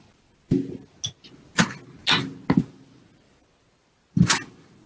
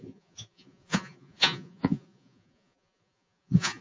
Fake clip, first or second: second